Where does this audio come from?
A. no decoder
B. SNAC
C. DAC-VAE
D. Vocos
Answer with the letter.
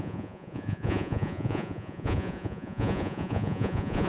D